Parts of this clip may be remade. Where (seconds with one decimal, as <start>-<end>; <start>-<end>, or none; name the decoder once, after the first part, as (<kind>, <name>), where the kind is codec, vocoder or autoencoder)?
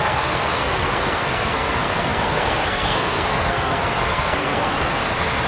0.0-5.5 (codec, SNAC)